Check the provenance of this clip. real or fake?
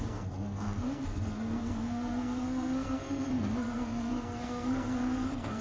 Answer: fake